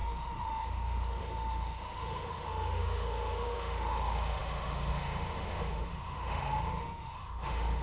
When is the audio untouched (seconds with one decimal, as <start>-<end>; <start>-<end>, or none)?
none